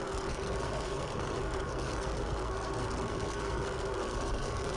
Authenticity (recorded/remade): remade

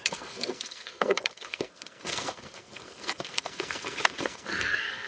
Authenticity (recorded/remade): remade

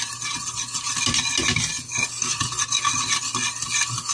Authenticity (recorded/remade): recorded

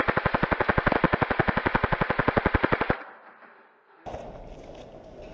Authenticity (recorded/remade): recorded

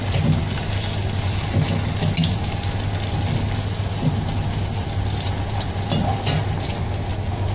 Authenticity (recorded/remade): recorded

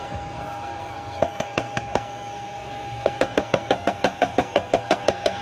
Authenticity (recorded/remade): remade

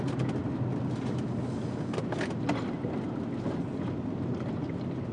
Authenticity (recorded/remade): recorded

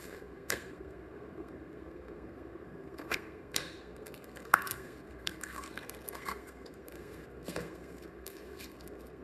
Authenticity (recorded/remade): remade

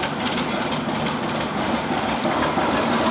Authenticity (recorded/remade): recorded